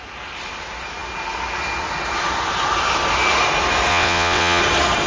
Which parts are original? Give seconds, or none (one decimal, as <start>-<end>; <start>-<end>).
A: 0.0-3.9; 4.6-5.1